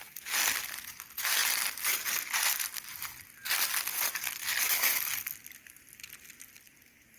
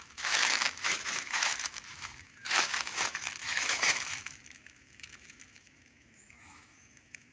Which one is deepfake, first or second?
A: second